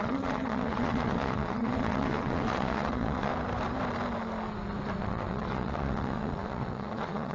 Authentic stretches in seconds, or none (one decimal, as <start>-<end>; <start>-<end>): 3.3-5.0